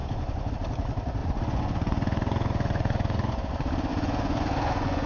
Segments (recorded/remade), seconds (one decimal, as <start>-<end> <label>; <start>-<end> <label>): 0.0-0.5 remade; 0.5-1.2 recorded; 1.2-3.5 remade; 3.5-3.9 recorded; 3.9-5.1 remade

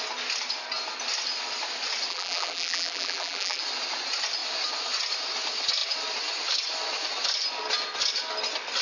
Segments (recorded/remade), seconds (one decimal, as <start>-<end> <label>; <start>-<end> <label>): 0.0-2.1 recorded; 2.1-3.6 remade; 3.6-8.8 recorded

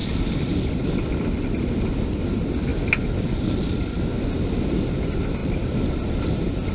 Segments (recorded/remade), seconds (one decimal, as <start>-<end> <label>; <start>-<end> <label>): 0.0-1.1 remade; 1.1-5.4 recorded; 5.4-5.9 remade; 5.9-6.7 recorded

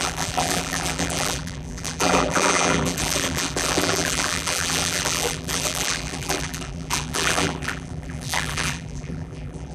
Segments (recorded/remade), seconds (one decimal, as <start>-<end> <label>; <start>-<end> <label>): 0.0-9.7 remade

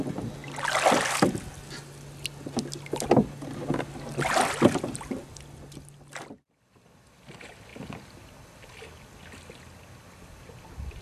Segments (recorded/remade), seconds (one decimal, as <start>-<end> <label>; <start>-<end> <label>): 0.0-11.0 recorded

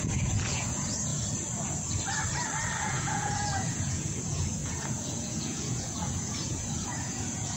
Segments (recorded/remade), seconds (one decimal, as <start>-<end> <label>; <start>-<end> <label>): 0.0-1.1 remade; 1.1-2.9 recorded; 2.9-7.6 remade

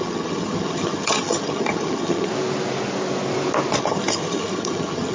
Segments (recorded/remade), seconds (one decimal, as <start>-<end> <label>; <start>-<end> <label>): 0.0-2.3 remade; 2.3-3.8 recorded; 3.8-5.1 remade